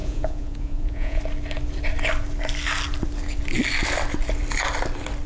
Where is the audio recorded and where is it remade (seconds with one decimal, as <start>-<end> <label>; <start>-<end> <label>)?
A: 0.0-1.2 remade; 1.2-5.3 recorded